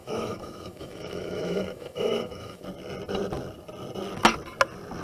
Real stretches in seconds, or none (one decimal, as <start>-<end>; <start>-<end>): 2.6-5.0